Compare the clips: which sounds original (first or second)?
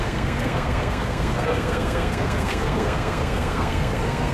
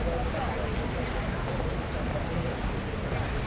second